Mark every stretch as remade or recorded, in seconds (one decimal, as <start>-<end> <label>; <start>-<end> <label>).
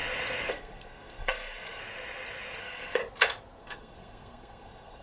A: 0.0-0.5 recorded; 0.5-1.8 remade; 1.8-2.6 recorded; 2.6-3.0 remade; 3.0-3.6 recorded; 3.6-5.0 remade